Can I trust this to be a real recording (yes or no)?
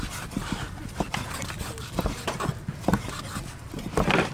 yes